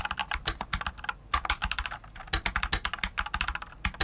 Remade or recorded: recorded